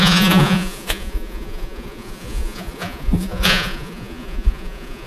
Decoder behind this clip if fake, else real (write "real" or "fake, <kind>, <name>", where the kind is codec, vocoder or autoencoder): fake, vocoder, Vocos